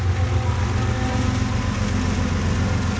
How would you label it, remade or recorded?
recorded